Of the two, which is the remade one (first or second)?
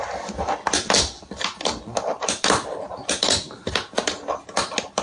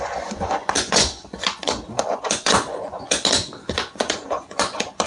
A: second